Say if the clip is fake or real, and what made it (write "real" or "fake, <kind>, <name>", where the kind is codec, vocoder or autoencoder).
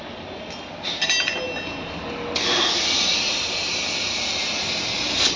real